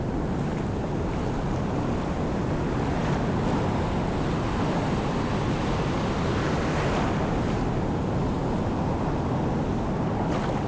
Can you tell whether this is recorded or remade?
recorded